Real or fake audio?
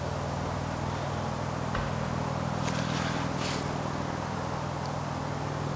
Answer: real